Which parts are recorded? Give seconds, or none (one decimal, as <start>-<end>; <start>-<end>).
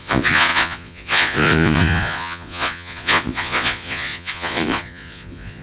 none